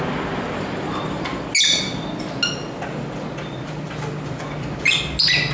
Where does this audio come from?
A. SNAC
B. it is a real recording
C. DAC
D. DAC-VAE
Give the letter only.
B